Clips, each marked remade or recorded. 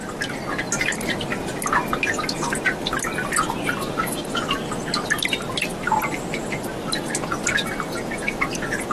recorded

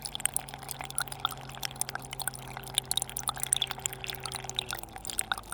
recorded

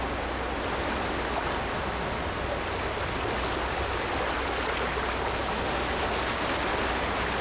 recorded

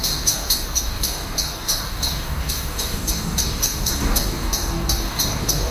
remade